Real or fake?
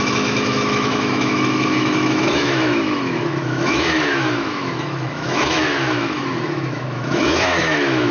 fake